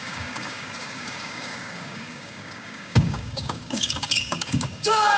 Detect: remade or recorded remade